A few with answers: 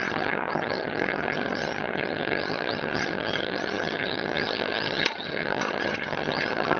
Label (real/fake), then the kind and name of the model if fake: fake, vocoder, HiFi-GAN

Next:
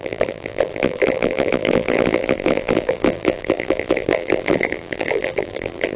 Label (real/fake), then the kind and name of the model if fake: fake, vocoder, BigVGAN v2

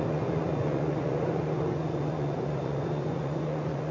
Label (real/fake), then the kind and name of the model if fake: fake, vocoder, Vocos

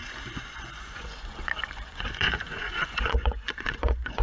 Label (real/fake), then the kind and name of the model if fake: fake, vocoder, Vocos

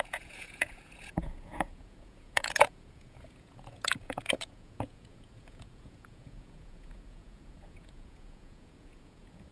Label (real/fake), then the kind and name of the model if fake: fake, vocoder, Vocos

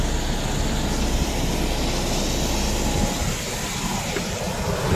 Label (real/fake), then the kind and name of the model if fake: real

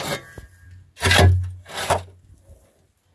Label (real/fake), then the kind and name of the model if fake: real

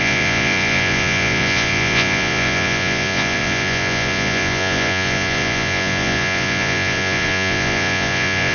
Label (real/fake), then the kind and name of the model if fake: fake, vocoder, Vocos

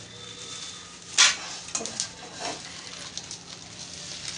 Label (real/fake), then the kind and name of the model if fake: real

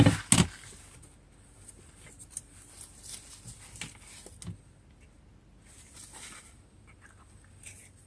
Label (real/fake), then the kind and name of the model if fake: real